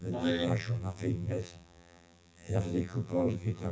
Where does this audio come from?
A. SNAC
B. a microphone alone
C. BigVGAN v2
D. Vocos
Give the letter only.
C